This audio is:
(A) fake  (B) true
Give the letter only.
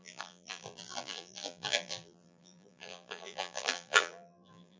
A